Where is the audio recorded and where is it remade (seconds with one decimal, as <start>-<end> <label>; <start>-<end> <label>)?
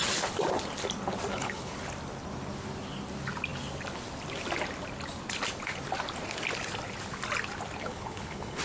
0.0-1.3 recorded; 1.3-1.8 remade; 1.8-7.8 recorded; 7.8-8.6 remade